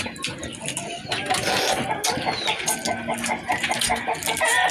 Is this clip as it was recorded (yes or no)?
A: yes